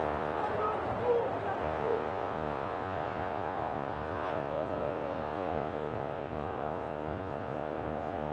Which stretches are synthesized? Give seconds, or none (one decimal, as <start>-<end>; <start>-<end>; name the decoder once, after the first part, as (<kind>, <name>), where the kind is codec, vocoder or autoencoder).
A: 0.0-0.4 (vocoder, Vocos); 1.6-8.3